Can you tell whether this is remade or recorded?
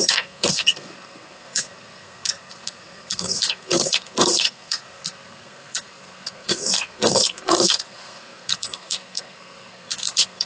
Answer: remade